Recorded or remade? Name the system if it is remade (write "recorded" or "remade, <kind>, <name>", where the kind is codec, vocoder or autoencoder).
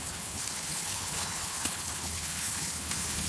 remade, codec, HILCodec